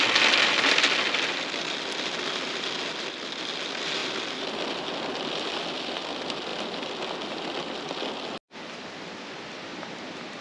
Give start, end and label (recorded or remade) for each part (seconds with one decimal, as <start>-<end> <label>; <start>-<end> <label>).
0.0-10.4 recorded